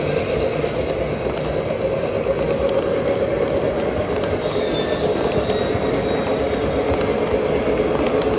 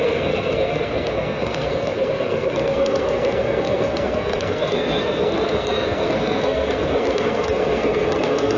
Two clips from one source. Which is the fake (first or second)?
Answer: second